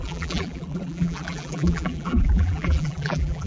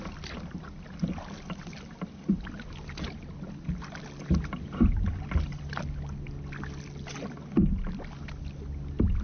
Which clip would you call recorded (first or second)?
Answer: second